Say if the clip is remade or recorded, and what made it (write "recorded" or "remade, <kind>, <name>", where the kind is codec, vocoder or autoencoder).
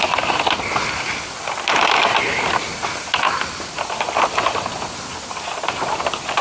recorded